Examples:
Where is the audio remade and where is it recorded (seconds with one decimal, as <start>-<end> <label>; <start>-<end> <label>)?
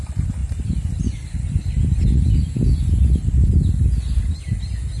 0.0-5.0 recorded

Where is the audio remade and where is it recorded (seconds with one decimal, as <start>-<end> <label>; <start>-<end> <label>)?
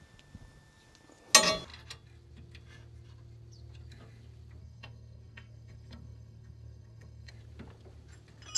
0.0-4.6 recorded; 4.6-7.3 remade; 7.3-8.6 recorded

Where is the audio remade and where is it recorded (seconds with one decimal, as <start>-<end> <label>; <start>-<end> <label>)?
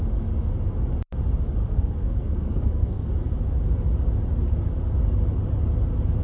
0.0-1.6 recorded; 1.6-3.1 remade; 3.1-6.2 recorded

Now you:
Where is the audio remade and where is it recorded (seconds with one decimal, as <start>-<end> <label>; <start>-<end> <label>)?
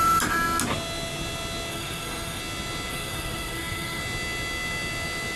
0.0-1.7 recorded; 1.7-2.4 remade; 2.4-2.9 recorded; 2.9-4.0 remade; 4.0-5.4 recorded